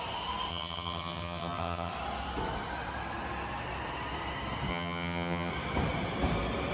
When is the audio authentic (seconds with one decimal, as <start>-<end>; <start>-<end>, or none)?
0.0-0.5; 1.9-4.7; 5.5-6.7